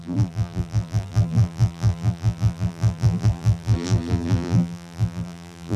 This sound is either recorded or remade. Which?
remade